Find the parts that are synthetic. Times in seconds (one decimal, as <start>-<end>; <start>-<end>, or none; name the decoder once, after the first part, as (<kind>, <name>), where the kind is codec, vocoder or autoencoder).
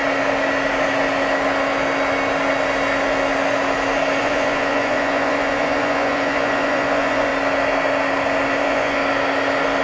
4.2-7.3 (vocoder, Vocos); 8.6-9.0